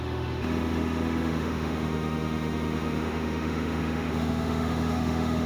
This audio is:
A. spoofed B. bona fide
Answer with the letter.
A